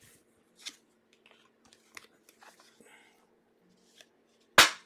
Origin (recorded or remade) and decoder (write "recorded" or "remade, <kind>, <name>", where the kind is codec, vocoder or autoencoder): recorded